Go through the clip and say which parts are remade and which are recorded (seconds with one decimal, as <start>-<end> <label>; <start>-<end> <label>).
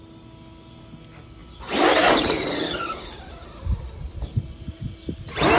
0.0-1.4 recorded; 1.4-4.8 remade; 4.8-5.6 recorded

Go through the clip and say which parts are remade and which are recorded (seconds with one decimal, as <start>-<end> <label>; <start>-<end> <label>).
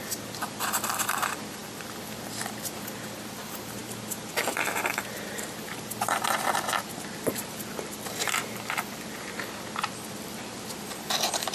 0.0-1.6 remade; 1.6-2.3 recorded; 2.3-11.5 remade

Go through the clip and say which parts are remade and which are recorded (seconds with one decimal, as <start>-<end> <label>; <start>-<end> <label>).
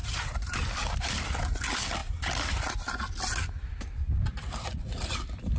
0.0-1.2 remade; 1.2-5.6 recorded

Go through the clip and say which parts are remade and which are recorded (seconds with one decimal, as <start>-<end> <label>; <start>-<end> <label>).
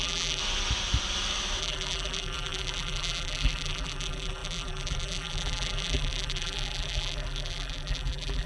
0.0-0.4 remade; 0.4-1.6 recorded; 1.6-8.5 remade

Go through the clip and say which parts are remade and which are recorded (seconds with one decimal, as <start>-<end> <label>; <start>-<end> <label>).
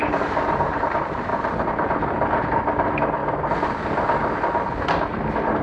0.0-1.3 remade; 1.3-2.0 recorded; 2.0-3.2 remade; 3.2-5.6 recorded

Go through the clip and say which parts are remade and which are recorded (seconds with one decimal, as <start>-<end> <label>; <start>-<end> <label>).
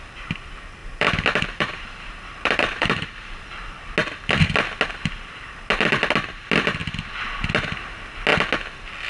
0.0-0.8 recorded; 0.8-3.4 remade; 3.4-9.1 recorded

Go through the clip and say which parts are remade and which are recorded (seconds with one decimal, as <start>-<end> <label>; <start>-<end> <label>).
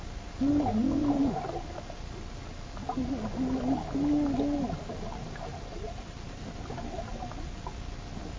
0.0-1.0 recorded; 1.0-1.5 remade; 1.5-5.7 recorded; 5.7-6.6 remade; 6.6-8.4 recorded